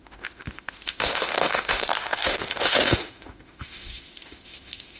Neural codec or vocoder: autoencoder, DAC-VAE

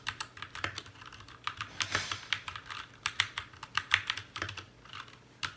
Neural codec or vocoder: none